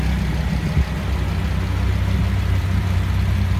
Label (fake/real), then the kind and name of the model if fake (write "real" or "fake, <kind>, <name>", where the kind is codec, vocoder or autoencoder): real